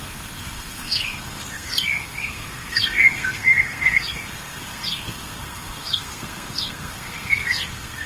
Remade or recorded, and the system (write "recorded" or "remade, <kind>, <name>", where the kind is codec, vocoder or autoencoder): remade, codec, SNAC